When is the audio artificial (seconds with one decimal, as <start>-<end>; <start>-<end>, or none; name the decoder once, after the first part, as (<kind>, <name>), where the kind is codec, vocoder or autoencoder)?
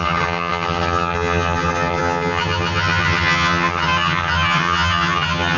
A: 0.0-5.6 (vocoder, HiFi-GAN)